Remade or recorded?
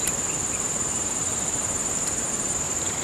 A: remade